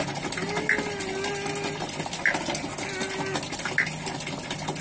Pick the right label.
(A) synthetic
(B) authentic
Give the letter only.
B